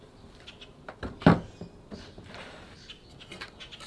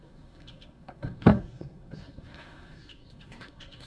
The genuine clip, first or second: first